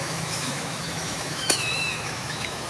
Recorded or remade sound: remade